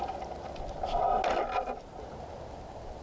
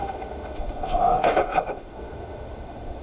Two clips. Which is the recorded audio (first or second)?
first